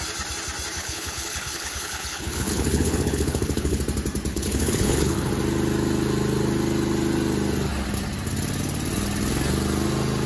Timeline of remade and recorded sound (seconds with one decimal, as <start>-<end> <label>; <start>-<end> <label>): 0.0-0.8 recorded; 0.8-3.8 remade; 3.8-4.3 recorded; 4.3-5.3 remade; 5.3-10.3 recorded